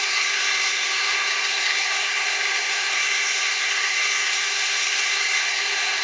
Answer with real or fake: fake